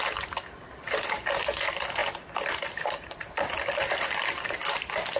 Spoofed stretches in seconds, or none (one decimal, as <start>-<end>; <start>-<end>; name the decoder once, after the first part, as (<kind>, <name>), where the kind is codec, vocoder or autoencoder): 2.0-5.2 (vocoder, BigVGAN v2)